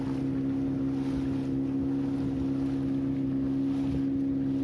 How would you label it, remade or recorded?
recorded